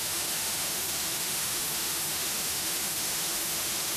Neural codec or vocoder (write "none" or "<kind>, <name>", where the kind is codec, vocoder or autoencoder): autoencoder, DAC-VAE